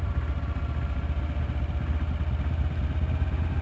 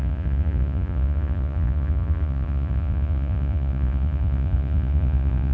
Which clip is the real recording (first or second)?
first